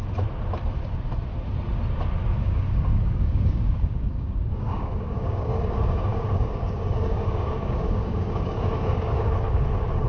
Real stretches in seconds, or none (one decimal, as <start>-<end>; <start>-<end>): 0.0-2.4